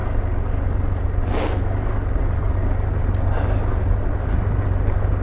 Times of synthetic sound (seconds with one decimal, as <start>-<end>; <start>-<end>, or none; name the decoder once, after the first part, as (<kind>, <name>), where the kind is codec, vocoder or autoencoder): none